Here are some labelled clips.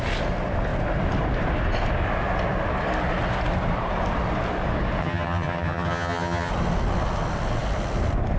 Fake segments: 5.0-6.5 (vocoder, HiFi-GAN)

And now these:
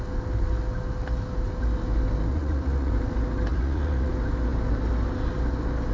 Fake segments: 2.3-2.9 (vocoder, Vocos); 3.5-4.1

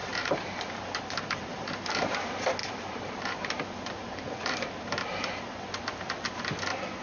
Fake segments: 0.0-2.2 (vocoder, BigVGAN v2); 2.6-5.4